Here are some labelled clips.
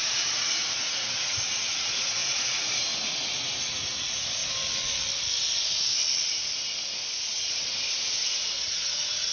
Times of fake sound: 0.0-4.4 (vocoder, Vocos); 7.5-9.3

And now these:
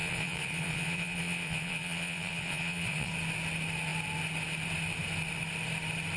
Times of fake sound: 0.0-3.1 (vocoder, Vocos)

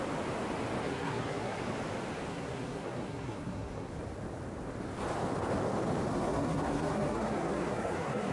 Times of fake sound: 0.8-1.6 (codec, SNAC); 2.3-3.9; 6.1-8.3

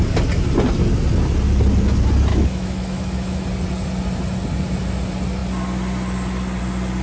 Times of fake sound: 2.3-3.4 (autoencoder, DAC-VAE)